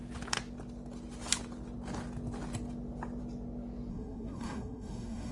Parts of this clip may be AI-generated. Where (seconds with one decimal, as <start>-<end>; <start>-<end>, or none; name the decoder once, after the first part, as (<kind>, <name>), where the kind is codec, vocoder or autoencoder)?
3.9-5.3 (codec, SNAC)